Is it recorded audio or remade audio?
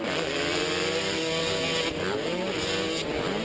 recorded